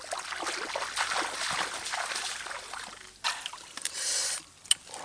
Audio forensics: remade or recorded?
recorded